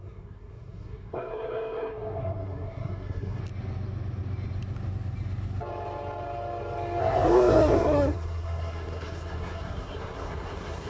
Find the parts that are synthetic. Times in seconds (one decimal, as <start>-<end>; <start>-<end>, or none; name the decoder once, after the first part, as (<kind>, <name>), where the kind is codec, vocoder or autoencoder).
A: 0.0-3.4 (codec, SNAC); 7.0-10.9